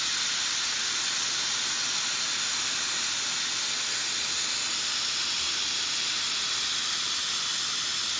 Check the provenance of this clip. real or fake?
real